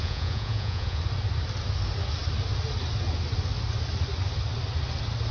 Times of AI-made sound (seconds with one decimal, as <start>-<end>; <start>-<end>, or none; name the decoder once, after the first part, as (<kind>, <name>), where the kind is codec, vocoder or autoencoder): 0.0-1.0 (vocoder, Vocos)